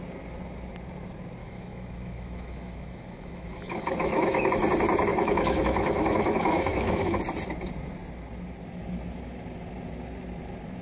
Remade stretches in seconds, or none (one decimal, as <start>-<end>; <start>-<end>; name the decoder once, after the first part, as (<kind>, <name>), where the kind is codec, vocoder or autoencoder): 1.4-4.5 (autoencoder, DAC-VAE); 5.1-7.2